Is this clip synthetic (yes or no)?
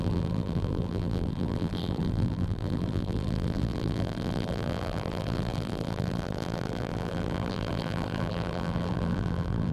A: yes